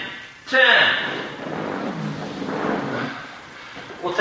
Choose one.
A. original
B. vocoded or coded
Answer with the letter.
A